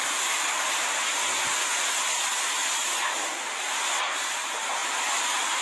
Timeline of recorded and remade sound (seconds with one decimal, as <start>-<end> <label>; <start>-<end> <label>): 0.0-5.6 recorded